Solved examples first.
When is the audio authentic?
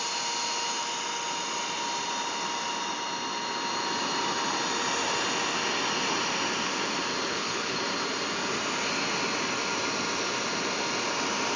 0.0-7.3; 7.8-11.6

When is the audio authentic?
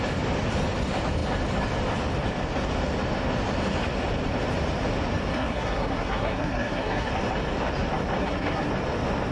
0.0-5.3; 7.1-8.2; 8.7-9.3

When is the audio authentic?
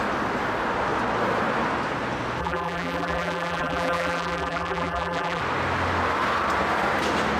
0.0-2.4; 5.4-7.4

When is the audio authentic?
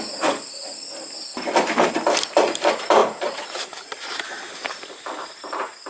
0.0-3.0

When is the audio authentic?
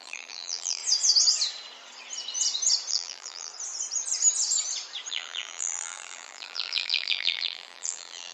0.8-2.9; 3.5-5.1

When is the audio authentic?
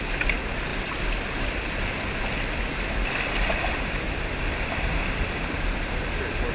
0.0-0.7; 4.1-6.5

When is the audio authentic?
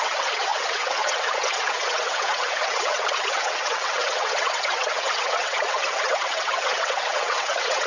none